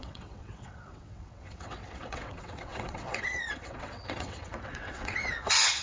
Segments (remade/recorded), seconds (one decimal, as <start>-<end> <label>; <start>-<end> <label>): 0.0-5.8 remade